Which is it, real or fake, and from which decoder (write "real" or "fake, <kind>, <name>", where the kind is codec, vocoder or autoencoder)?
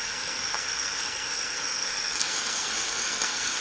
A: fake, codec, SNAC